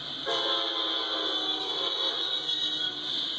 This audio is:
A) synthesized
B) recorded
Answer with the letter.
B